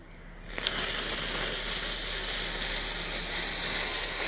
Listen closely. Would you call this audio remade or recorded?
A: recorded